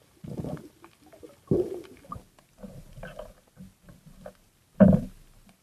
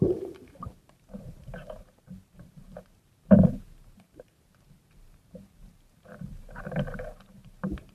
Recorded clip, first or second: first